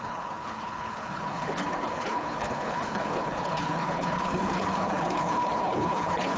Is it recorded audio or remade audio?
remade